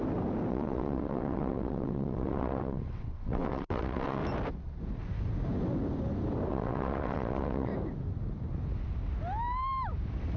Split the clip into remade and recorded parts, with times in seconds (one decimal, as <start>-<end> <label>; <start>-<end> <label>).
0.0-0.5 recorded; 0.5-4.2 remade; 4.2-6.5 recorded; 6.5-7.7 remade; 7.7-10.4 recorded